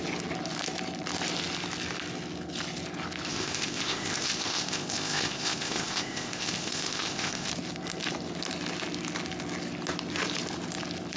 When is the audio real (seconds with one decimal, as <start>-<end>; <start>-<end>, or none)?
0.0-3.3; 7.5-11.2